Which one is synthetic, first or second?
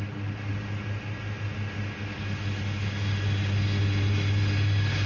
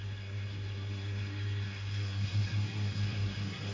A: second